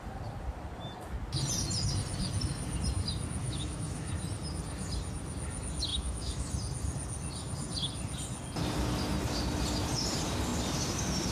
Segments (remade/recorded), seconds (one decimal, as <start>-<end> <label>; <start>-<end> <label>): 0.0-3.4 recorded; 3.4-4.1 remade; 4.1-5.9 recorded; 5.9-6.5 remade; 6.5-11.3 recorded